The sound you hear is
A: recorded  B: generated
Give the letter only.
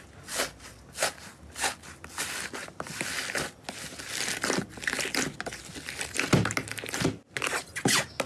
A